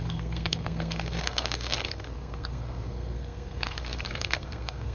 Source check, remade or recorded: remade